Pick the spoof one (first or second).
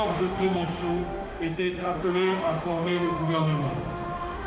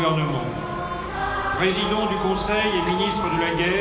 first